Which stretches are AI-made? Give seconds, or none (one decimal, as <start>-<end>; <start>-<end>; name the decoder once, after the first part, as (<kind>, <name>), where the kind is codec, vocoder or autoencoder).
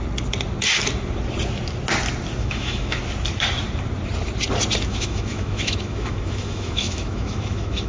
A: 2.4-3.0 (autoencoder, DAC-VAE); 4.9-7.9